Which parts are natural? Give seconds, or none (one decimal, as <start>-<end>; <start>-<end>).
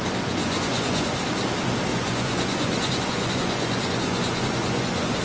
0.0-0.4; 1.1-1.9